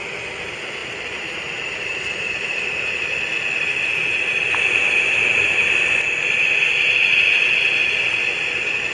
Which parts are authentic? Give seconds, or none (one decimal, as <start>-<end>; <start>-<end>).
0.0-0.8; 3.1-8.9